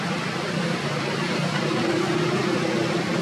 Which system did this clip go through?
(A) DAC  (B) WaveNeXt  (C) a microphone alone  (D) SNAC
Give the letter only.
C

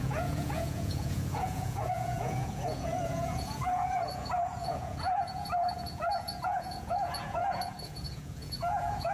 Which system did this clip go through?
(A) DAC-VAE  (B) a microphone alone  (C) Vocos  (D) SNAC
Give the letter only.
C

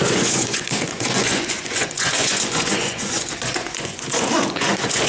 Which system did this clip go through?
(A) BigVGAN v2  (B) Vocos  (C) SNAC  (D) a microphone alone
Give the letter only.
B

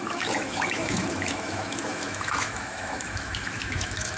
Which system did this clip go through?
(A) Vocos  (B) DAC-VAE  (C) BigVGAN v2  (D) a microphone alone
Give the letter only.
B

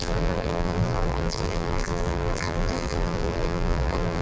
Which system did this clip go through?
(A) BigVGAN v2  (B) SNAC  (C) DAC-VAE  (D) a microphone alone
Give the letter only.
A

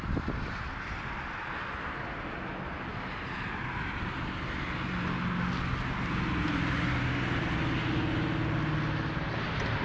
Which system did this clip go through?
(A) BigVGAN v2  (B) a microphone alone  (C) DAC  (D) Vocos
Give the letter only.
B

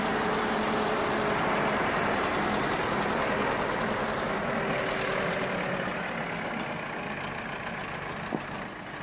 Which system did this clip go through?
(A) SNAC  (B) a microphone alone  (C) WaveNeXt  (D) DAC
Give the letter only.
B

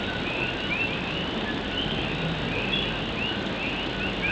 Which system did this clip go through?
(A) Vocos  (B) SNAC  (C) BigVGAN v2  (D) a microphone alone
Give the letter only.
D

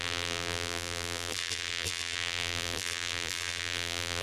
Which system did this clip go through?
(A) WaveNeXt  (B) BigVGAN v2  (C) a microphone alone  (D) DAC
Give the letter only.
B